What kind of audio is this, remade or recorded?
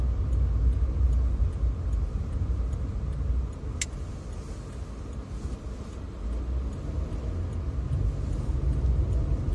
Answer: recorded